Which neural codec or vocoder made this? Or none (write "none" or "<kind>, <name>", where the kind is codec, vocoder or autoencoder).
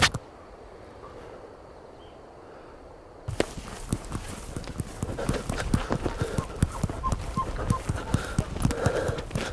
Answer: none